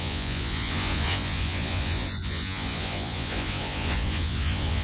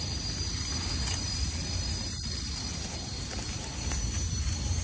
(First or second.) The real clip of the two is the second